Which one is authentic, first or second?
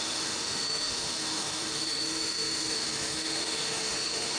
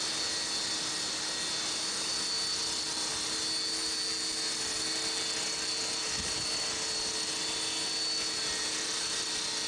second